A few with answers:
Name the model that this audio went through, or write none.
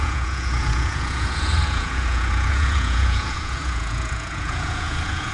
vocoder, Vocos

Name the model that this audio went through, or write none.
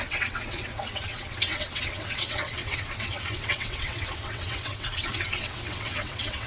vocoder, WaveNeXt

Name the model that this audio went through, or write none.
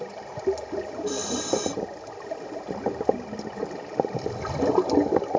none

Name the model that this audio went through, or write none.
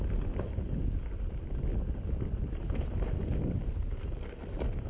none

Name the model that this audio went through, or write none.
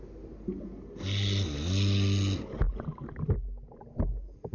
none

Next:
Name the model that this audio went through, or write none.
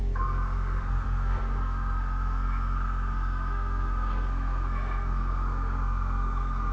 codec, SNAC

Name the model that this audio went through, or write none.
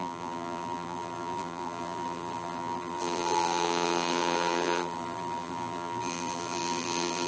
vocoder, BigVGAN v2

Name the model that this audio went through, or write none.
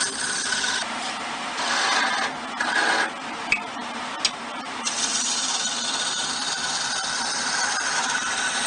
none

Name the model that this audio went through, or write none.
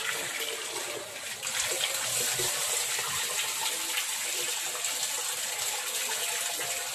none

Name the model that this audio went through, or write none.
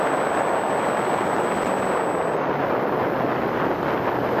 none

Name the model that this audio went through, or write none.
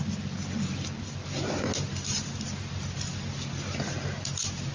none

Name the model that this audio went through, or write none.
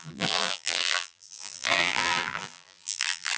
vocoder, BigVGAN v2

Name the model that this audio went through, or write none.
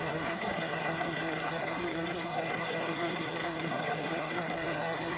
codec, SNAC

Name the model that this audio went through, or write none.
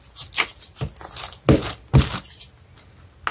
none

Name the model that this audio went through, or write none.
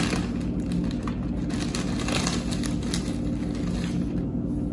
none